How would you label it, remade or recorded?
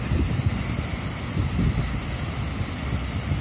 recorded